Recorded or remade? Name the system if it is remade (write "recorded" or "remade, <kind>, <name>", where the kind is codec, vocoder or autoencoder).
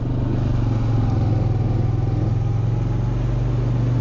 recorded